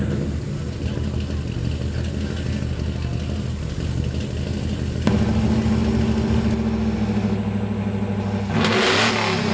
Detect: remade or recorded recorded